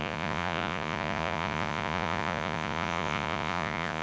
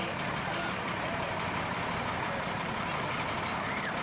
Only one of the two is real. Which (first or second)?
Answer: second